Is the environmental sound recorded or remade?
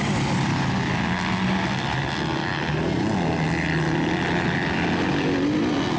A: recorded